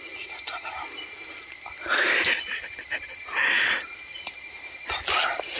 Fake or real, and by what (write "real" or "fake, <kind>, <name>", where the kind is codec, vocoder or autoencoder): real